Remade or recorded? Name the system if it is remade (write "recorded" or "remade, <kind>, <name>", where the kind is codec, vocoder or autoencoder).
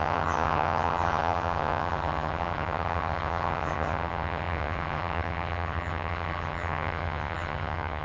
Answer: remade, vocoder, HiFi-GAN